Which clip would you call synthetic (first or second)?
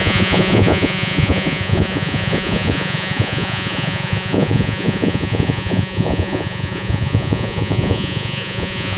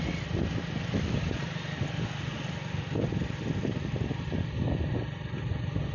first